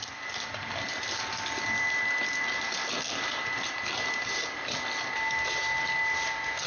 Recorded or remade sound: recorded